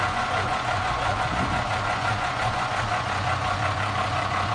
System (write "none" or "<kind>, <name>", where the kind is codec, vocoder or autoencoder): vocoder, Vocos